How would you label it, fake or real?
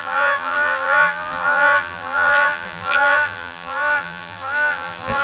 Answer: fake